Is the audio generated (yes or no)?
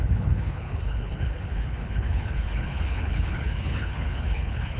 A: yes